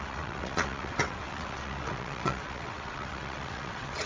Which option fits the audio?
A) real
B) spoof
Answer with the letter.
B